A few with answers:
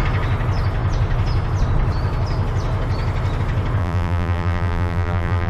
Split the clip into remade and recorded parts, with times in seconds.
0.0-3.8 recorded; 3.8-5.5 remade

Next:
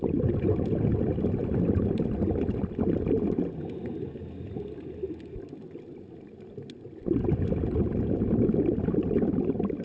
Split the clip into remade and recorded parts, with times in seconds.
0.0-1.4 recorded; 1.4-2.3 remade; 2.3-9.8 recorded